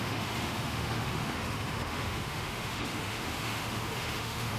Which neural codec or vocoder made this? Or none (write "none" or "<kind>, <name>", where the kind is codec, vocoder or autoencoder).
autoencoder, DAC-VAE